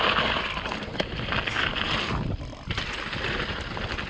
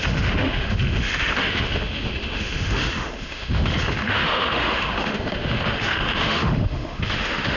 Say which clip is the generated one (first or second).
second